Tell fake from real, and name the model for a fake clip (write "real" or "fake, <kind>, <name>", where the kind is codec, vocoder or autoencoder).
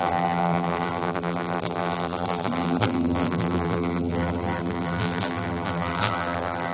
fake, vocoder, BigVGAN v2